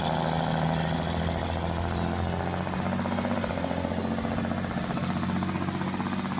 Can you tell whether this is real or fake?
real